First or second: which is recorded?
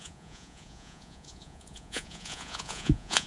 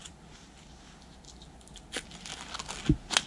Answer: second